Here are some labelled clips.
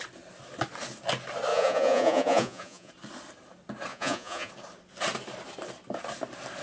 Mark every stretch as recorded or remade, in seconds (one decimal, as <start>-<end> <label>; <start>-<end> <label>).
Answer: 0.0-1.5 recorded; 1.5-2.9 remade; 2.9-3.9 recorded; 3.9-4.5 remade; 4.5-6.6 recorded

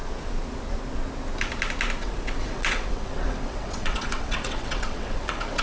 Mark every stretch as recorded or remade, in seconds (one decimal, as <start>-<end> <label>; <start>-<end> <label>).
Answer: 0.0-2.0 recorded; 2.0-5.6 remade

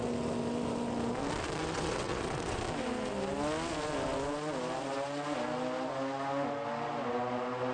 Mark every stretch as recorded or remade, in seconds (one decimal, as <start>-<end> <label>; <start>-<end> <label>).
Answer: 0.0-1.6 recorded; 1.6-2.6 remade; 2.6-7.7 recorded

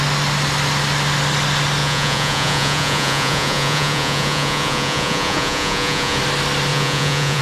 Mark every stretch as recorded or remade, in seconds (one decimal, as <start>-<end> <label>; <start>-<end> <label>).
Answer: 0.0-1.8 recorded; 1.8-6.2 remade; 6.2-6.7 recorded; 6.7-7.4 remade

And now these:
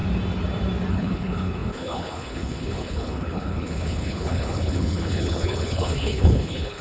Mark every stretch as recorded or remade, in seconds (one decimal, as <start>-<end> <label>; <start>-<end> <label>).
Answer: 0.0-0.9 recorded; 0.9-6.8 remade

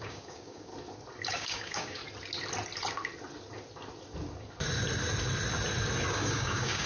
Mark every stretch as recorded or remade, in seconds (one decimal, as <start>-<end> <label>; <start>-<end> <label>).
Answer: 0.0-0.7 remade; 0.7-1.3 recorded; 1.3-2.0 remade; 2.0-6.1 recorded; 6.1-6.9 remade

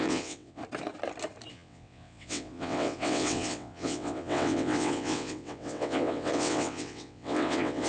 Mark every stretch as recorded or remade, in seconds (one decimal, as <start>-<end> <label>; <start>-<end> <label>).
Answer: 0.0-0.6 remade; 0.6-1.5 recorded; 1.5-7.9 remade